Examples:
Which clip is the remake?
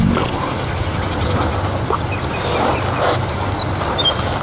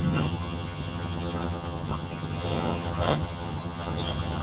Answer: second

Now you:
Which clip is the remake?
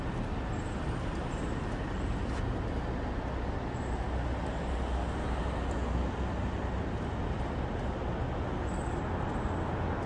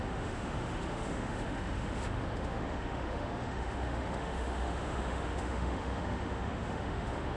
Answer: second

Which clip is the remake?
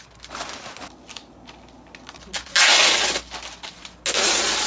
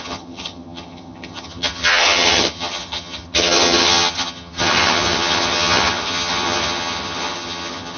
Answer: second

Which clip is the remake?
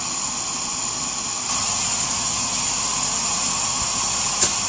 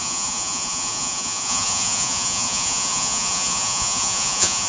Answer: second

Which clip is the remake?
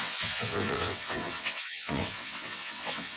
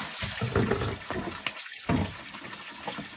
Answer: first